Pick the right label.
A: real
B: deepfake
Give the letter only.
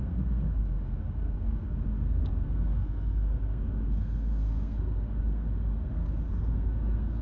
B